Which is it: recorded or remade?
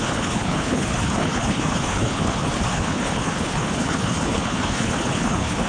remade